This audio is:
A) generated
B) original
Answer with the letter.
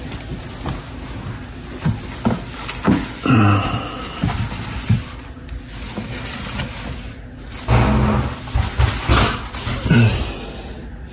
B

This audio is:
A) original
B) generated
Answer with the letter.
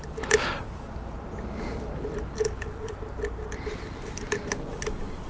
A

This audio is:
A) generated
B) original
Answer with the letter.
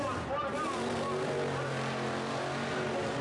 B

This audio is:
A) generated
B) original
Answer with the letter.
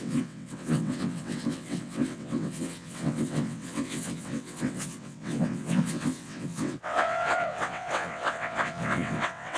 A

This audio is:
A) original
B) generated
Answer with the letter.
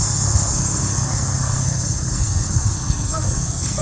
B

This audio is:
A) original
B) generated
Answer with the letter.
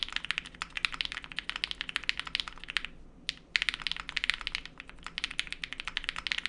A